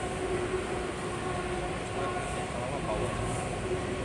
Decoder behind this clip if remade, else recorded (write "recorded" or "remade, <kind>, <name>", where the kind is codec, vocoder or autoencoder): recorded